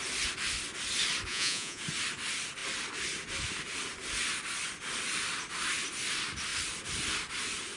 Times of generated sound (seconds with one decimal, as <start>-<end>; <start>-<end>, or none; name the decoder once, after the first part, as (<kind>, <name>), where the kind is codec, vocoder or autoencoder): 1.3-1.8 (vocoder, Vocos)